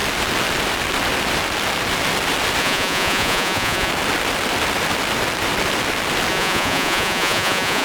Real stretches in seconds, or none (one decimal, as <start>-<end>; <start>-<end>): 0.0-2.6; 3.9-6.3